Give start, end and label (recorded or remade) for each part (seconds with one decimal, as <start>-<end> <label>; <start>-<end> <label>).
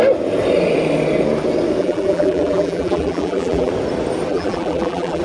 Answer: 0.0-1.8 recorded; 1.8-3.7 remade; 3.7-4.3 recorded; 4.3-5.2 remade